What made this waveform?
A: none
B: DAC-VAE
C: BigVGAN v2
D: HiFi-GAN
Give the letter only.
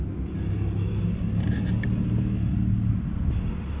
A